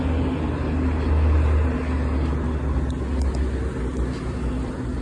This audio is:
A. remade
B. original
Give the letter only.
B